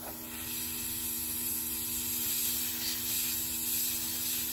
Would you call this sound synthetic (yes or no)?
no